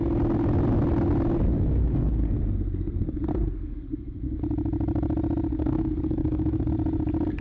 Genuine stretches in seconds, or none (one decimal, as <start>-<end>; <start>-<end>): 0.0-1.8; 4.4-5.5; 6.7-7.4